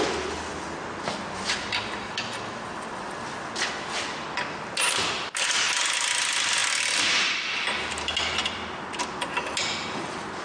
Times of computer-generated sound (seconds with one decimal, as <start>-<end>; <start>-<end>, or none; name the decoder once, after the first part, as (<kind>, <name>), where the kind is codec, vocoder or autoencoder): none